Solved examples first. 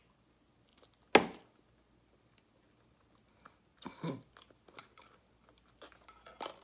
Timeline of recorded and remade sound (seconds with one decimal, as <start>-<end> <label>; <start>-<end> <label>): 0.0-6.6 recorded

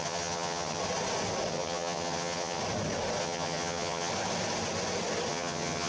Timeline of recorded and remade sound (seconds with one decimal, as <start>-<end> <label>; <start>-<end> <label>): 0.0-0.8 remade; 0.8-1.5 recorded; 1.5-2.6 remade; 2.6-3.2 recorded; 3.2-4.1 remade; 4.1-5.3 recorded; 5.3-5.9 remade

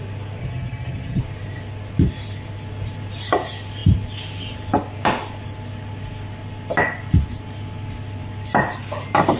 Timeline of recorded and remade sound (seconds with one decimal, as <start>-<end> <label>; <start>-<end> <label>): 0.0-0.4 recorded; 0.4-1.2 remade; 1.2-9.4 recorded